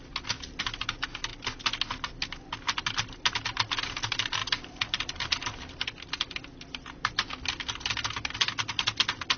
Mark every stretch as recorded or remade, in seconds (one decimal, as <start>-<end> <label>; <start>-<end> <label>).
0.0-9.4 recorded